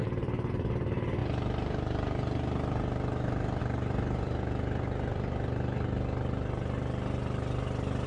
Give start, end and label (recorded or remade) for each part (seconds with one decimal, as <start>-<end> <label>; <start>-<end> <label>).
0.0-0.5 remade; 0.5-8.1 recorded